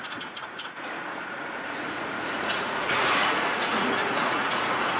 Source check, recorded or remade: remade